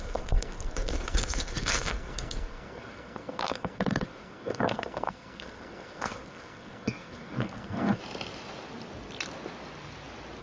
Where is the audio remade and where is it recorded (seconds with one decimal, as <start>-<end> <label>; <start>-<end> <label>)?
0.0-8.0 remade; 8.0-10.4 recorded